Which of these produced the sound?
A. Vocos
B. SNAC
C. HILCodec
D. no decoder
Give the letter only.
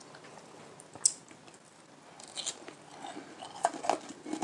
D